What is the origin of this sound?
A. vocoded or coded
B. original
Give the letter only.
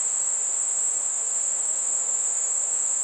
A